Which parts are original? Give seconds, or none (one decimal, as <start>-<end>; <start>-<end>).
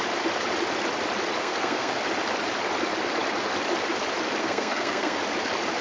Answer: 0.0-1.4; 2.0-4.4; 5.2-5.8